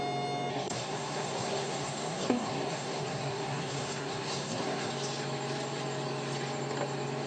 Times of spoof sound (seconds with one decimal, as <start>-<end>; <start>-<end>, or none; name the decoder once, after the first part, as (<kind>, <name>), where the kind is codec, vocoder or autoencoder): 0.5-4.9 (codec, SNAC)